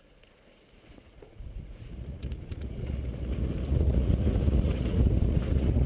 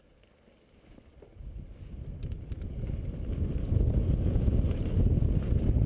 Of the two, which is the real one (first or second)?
second